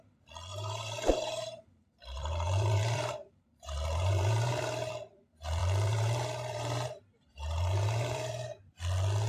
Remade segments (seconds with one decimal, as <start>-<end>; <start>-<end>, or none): 0.5-4.9; 5.6-8.6